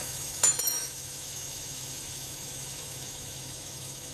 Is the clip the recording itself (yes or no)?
no